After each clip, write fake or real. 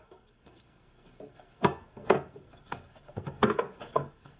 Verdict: fake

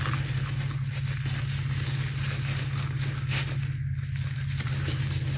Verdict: real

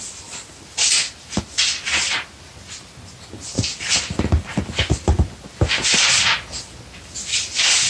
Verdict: real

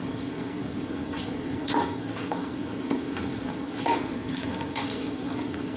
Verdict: fake